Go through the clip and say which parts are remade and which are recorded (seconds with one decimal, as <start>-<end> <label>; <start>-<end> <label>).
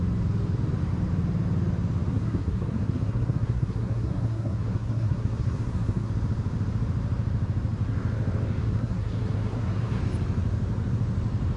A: 0.0-2.1 recorded; 2.1-6.1 remade; 6.1-8.6 recorded; 8.6-10.0 remade; 10.0-11.6 recorded